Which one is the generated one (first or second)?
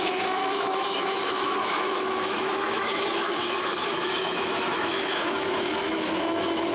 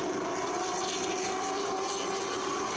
first